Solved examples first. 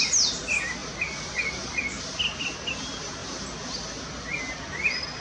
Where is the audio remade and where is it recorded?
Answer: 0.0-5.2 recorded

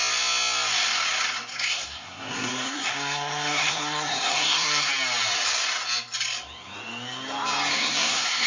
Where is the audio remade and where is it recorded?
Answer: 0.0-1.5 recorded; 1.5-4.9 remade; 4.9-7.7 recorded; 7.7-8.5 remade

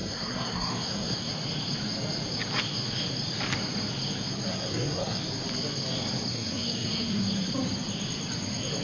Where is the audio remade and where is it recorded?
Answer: 0.0-1.3 remade; 1.3-4.5 recorded; 4.5-5.2 remade; 5.2-6.3 recorded; 6.3-7.2 remade; 7.2-8.8 recorded